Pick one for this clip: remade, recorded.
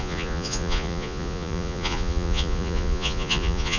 remade